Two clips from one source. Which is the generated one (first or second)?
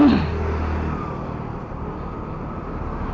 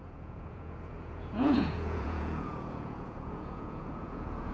second